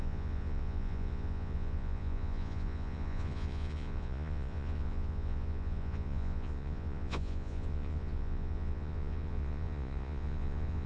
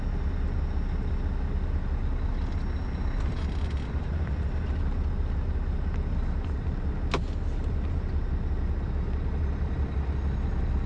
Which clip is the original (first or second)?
second